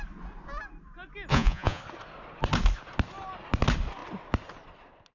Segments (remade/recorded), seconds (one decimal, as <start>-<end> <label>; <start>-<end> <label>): 0.0-1.3 recorded; 1.3-1.8 remade; 1.8-5.1 recorded